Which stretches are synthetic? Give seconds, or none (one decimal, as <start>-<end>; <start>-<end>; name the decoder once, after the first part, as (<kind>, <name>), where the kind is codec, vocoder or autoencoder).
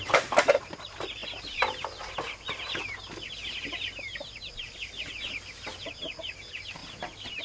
none